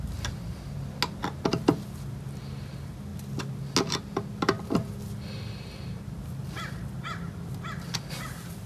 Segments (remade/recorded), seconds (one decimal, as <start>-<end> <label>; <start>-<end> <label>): 0.0-8.7 recorded